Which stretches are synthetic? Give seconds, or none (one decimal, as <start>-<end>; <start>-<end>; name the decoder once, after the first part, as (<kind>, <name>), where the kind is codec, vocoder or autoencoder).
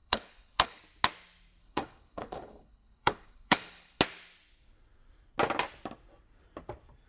0.0-0.8 (codec, HILCodec); 1.6-4.0